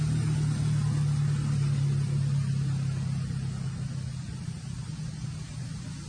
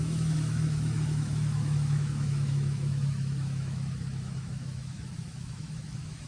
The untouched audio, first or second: first